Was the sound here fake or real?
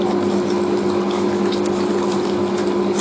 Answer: real